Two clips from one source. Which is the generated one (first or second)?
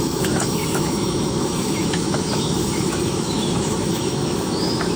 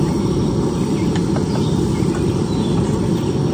first